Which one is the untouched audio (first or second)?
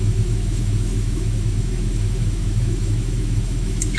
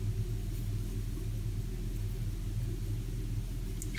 second